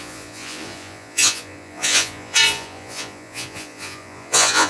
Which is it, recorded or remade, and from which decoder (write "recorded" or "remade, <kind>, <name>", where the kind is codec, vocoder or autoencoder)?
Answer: remade, vocoder, Vocos